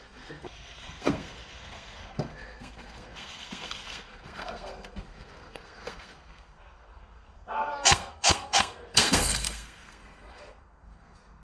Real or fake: fake